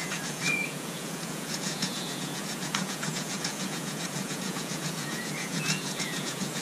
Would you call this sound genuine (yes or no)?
no